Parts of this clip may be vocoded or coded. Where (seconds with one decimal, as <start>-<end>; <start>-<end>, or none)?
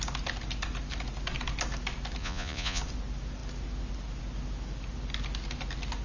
2.2-2.8